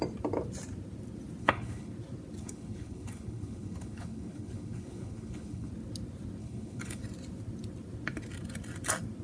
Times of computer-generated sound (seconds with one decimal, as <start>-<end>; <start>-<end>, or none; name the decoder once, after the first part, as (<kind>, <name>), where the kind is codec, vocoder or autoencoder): 1.4-1.9 (codec, HILCodec); 2.4-5.7; 6.4-7.0